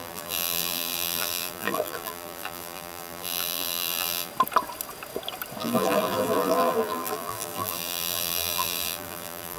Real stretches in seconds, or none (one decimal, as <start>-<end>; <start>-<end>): 4.3-5.6